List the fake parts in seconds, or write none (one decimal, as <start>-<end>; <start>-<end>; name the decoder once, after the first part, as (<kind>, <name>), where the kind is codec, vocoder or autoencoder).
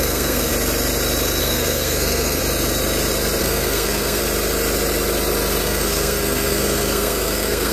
0.0-0.5 (codec, SNAC); 1.4-2.4; 3.4-4.2; 5.6-7.7